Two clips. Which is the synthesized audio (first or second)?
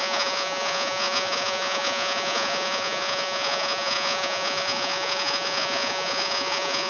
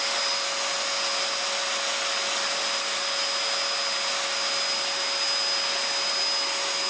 first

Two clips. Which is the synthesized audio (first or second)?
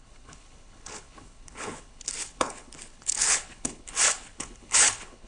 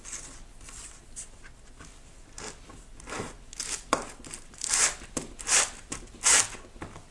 first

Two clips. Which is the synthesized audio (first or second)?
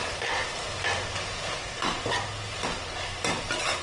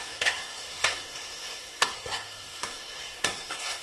second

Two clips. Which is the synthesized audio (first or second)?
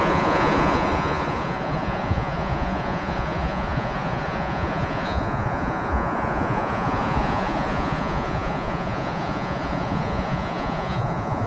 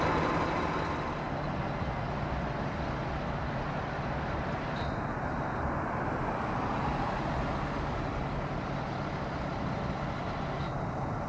first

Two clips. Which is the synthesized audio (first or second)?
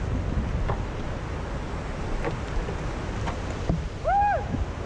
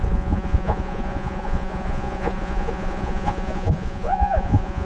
second